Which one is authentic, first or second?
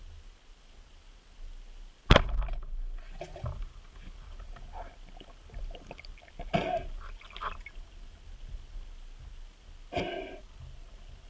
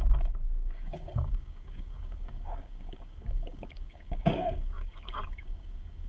first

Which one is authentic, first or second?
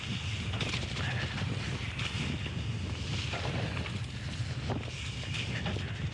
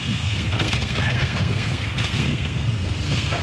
first